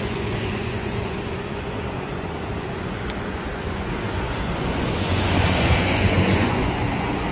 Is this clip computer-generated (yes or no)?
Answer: yes